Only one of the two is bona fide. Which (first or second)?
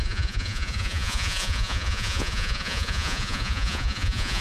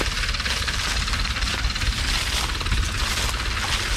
second